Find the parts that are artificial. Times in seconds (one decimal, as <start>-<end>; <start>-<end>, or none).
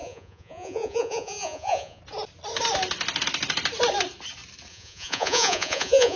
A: 0.0-2.0; 4.7-6.2